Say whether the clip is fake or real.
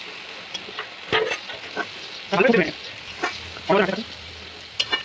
real